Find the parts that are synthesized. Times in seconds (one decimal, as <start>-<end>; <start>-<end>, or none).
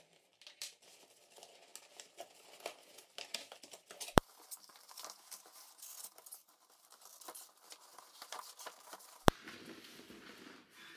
0.0-1.7; 3.1-11.0